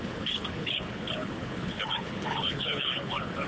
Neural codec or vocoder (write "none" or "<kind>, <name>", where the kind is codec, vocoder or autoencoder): codec, HILCodec